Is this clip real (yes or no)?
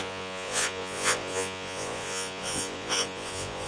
no